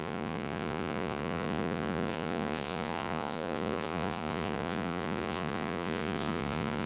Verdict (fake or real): fake